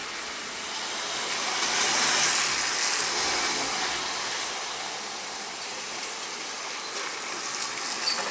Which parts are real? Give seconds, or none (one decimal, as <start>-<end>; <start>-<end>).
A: 0.0-8.3